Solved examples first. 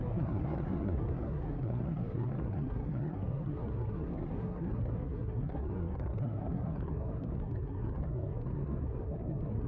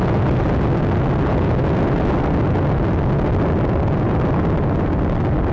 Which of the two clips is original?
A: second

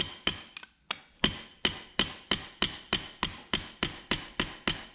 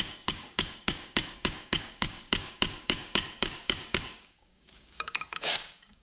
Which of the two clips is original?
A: first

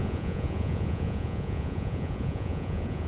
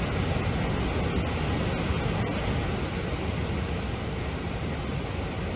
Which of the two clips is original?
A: second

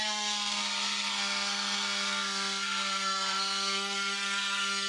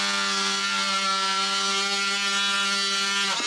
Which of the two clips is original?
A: second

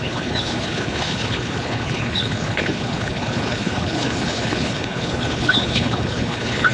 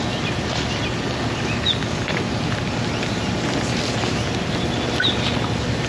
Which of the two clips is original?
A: second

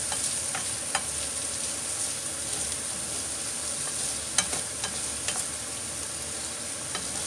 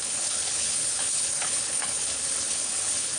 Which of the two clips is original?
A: first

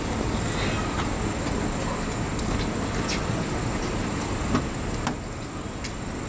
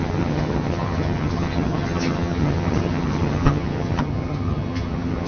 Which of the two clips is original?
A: first